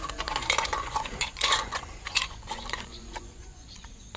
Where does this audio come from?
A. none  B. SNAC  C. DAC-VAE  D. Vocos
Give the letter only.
D